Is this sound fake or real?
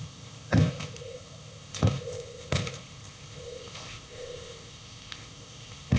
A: fake